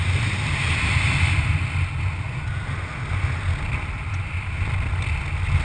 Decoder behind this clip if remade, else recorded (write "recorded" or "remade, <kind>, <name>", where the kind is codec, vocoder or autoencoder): recorded